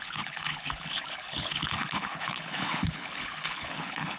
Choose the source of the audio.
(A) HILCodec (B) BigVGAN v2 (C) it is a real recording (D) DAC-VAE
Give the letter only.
A